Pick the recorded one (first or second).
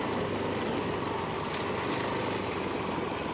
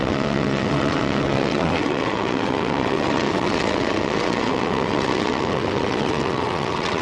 first